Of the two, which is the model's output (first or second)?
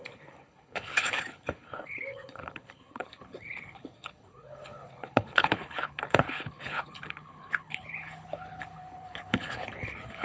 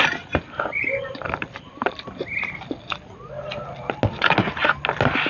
first